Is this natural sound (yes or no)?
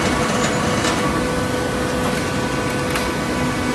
yes